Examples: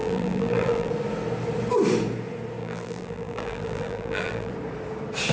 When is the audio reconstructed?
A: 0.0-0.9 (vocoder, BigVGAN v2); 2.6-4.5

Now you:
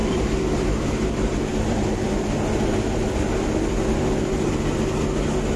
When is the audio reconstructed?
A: 0.0-1.1 (vocoder, BigVGAN v2)

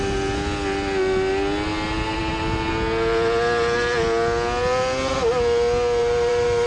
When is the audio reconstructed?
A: 6.0-6.7 (vocoder, BigVGAN v2)

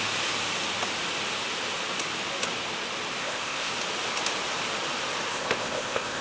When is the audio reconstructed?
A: 3.2-3.7 (codec, ZipCodec); 5.3-6.2